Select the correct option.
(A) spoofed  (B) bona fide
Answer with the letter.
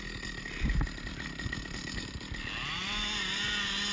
B